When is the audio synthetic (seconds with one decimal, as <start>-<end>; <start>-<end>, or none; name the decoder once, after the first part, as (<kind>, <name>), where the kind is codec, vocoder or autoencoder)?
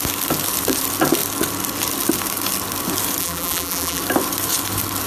3.2-4.0 (vocoder, BigVGAN v2)